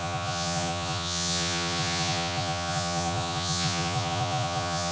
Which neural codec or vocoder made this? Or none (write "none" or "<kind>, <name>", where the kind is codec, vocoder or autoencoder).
vocoder, Vocos